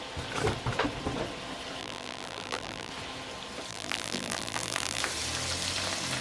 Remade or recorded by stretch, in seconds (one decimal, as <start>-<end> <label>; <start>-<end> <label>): 0.0-1.8 recorded; 1.8-2.9 remade; 2.9-3.7 recorded; 3.7-5.0 remade; 5.0-6.2 recorded